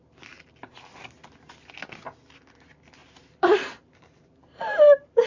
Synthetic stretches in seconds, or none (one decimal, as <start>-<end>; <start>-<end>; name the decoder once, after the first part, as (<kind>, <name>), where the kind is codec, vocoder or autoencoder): 3.0-5.3 (vocoder, BigVGAN v2)